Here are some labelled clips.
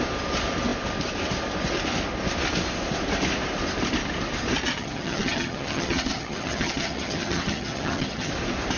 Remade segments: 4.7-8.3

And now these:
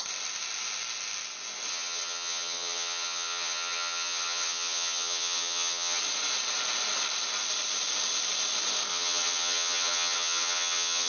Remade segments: 1.7-6.0; 8.9-11.1

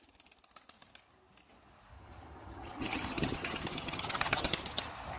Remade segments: 1.9-4.5

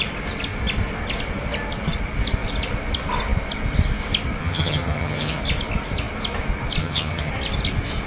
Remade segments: 4.4-5.4; 6.8-7.3